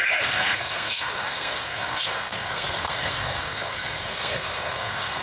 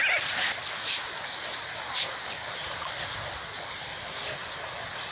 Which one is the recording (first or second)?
second